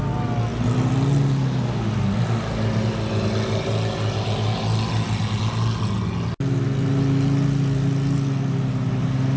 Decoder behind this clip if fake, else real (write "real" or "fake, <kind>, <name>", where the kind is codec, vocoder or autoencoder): real